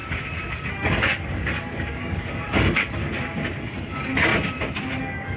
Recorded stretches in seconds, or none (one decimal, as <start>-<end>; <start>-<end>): 0.0-0.5; 3.0-3.6; 4.3-5.0